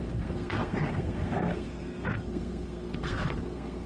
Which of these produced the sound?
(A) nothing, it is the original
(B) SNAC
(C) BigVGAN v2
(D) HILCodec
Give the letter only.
B